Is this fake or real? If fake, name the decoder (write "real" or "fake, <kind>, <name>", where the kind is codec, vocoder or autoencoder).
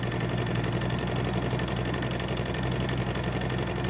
real